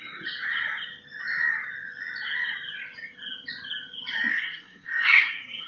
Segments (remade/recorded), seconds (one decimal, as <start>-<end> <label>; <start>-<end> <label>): 0.0-4.3 recorded; 4.3-5.7 remade